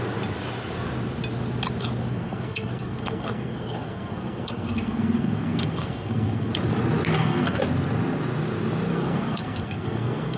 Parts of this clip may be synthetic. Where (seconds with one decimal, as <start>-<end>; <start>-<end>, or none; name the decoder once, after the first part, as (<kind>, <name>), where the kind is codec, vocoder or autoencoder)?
2.1-6.5 (codec, SNAC); 7.1-7.6; 8.9-10.4